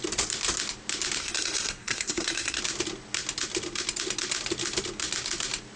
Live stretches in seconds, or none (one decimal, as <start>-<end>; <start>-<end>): 0.0-1.2; 2.6-5.8

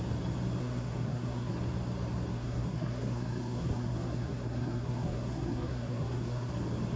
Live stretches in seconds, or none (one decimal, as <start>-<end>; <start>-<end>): 0.0-0.6; 1.5-2.3; 6.5-7.0